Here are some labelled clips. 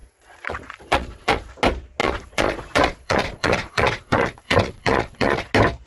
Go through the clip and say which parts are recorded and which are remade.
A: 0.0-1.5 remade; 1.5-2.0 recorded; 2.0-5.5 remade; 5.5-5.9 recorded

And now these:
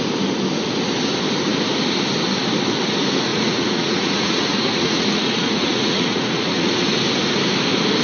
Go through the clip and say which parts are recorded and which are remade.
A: 0.0-3.3 recorded; 3.3-6.8 remade; 6.8-8.0 recorded

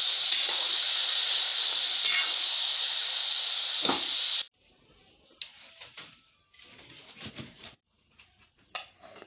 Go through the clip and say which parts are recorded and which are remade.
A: 0.0-1.5 remade; 1.5-2.4 recorded; 2.4-3.2 remade; 3.2-7.3 recorded; 7.3-9.3 remade